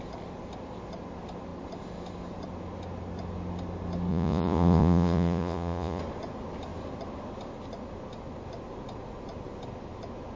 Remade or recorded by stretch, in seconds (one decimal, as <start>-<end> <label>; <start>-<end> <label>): 0.0-4.1 recorded; 4.1-6.0 remade; 6.0-10.4 recorded